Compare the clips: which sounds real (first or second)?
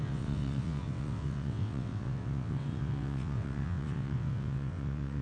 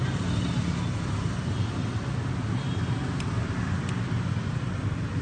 second